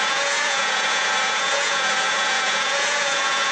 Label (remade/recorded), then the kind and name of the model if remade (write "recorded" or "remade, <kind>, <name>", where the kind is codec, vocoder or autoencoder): remade, vocoder, Vocos